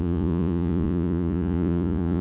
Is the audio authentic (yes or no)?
no